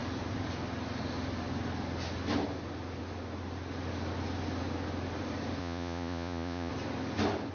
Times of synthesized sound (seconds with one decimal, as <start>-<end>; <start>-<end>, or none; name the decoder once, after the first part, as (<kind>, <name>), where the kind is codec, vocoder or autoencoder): 5.6-6.7 (vocoder, Vocos)